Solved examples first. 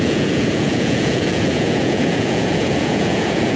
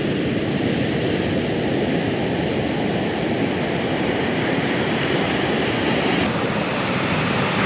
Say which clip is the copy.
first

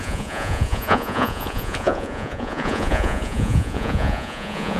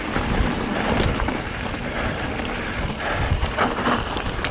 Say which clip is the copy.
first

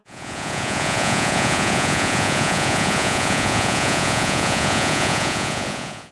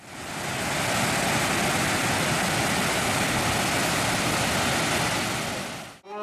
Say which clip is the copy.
first